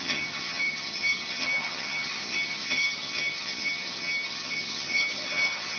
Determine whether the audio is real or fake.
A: fake